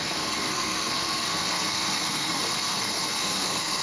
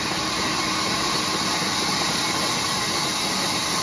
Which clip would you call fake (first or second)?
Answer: first